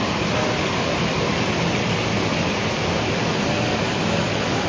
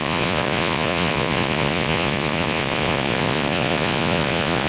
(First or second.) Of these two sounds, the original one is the first